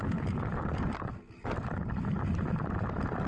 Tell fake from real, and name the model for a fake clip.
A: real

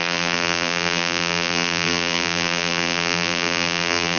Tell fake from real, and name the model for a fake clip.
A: fake, vocoder, BigVGAN v2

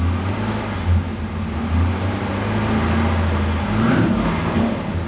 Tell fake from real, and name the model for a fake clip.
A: real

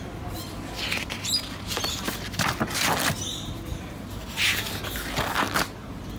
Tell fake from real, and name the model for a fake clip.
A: real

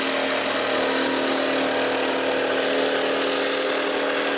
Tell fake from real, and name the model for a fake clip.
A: real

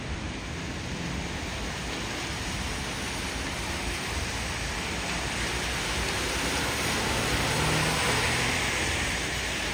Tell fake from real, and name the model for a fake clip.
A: real